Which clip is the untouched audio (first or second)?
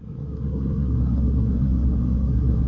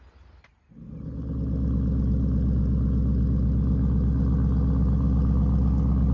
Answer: second